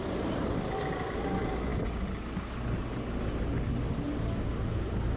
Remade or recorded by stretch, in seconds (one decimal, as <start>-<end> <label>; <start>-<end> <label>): 0.0-5.2 recorded